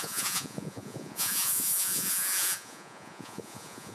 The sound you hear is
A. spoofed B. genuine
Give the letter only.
A